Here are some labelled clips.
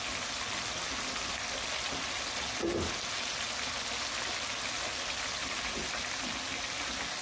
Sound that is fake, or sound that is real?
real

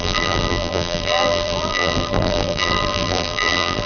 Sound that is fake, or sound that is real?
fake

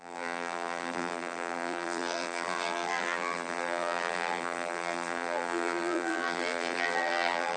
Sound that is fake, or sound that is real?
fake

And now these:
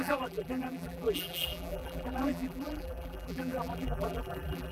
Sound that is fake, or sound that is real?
fake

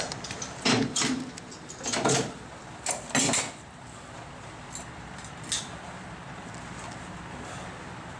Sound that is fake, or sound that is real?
real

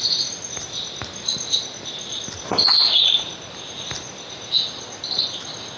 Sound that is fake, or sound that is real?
real